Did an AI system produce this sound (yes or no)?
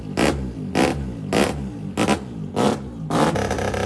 no